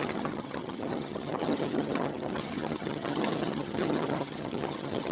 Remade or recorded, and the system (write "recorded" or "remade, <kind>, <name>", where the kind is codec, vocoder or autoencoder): remade, vocoder, HiFi-GAN